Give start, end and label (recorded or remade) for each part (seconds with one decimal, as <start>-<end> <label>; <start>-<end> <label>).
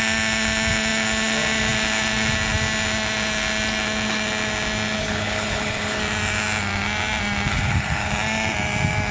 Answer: 0.0-5.0 recorded; 5.0-6.0 remade; 6.0-7.5 recorded; 7.5-8.1 remade; 8.1-9.1 recorded